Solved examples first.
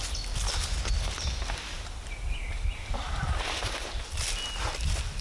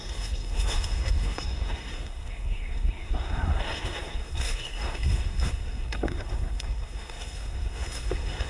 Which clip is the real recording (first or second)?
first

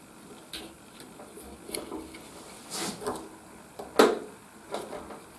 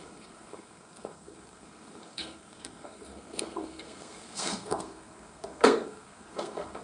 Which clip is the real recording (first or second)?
first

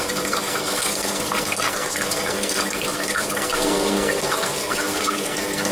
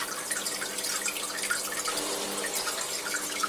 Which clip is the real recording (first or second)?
second